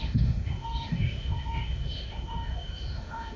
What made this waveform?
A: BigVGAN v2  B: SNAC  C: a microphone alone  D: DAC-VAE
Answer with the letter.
D